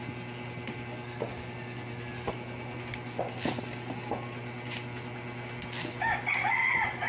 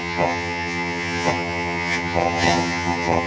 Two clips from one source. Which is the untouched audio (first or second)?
first